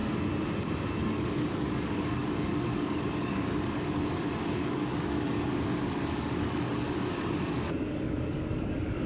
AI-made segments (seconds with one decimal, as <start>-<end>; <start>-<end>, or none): 1.0-9.1